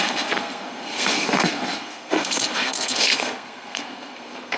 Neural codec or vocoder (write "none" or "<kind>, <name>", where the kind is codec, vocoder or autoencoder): codec, SNAC